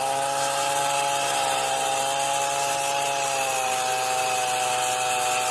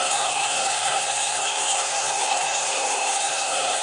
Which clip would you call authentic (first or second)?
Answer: first